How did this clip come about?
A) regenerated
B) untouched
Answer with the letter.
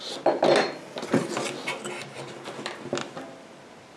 B